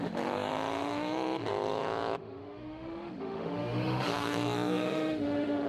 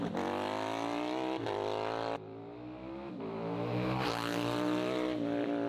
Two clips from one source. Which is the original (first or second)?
second